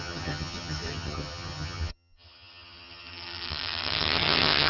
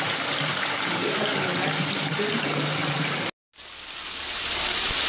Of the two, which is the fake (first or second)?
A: first